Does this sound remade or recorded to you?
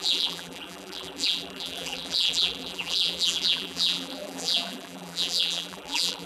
remade